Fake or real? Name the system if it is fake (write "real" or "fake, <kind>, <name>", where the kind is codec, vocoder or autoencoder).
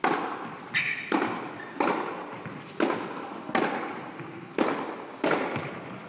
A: real